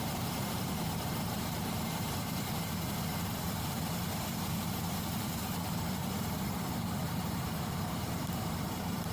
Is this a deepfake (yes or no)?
yes